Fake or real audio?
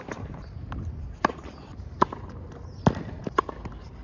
real